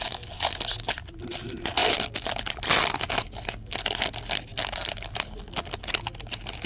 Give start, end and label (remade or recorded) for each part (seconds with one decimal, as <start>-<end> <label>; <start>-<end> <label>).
0.0-6.7 recorded